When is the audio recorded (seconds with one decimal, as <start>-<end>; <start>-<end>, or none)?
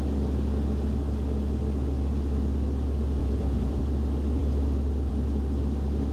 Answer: 0.0-3.2; 3.8-6.1